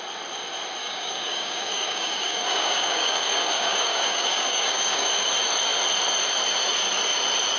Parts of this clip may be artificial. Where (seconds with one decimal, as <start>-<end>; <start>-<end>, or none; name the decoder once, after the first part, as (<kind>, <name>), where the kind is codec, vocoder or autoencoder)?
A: 0.8-5.3 (codec, DAC)